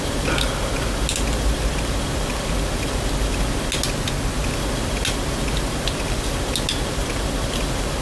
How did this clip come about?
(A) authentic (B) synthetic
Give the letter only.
A